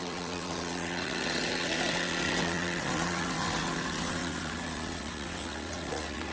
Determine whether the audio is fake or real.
fake